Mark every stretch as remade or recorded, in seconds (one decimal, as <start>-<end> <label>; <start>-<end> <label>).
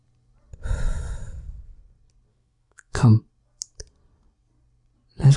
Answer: 0.0-2.3 recorded; 2.3-3.2 remade; 3.2-5.4 recorded